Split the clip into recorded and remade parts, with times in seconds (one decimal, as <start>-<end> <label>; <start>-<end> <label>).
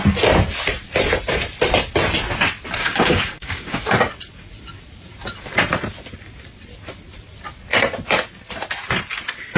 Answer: 0.0-2.8 recorded; 2.8-3.9 remade; 3.9-9.6 recorded